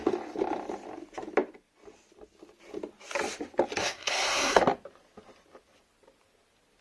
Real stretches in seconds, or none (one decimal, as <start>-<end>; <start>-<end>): 0.0-3.8; 4.6-6.8